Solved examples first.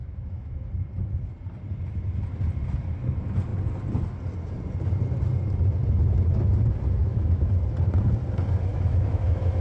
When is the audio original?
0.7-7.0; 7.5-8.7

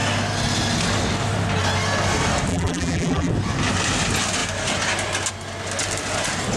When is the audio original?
0.0-2.5; 3.3-6.6

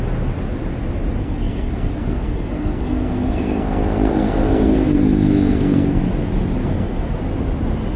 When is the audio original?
0.0-1.2; 6.0-6.6; 7.2-8.0